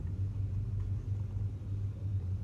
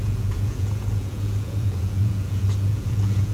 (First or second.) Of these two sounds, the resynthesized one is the second